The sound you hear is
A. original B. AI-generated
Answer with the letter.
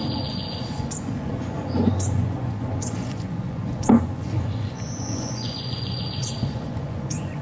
B